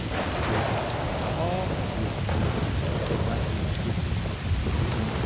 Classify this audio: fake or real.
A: real